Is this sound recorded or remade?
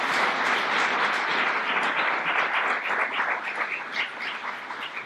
recorded